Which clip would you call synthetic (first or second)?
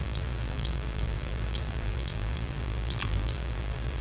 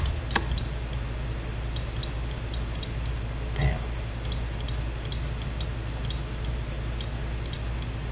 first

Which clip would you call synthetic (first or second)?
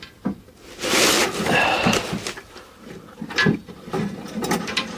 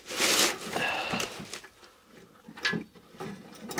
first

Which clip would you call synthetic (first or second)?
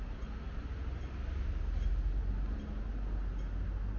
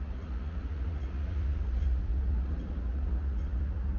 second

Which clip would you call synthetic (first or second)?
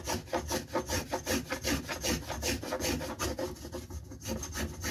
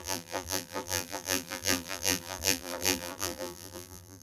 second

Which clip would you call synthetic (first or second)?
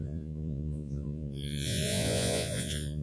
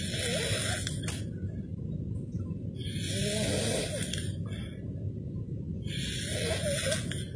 first